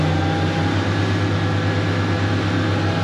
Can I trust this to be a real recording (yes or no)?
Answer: yes